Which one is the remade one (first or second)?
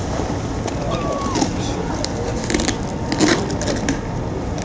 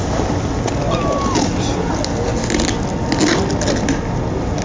first